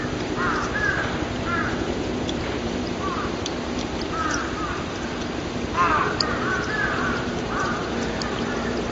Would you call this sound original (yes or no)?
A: no